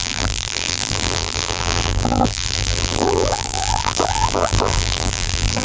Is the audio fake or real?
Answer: fake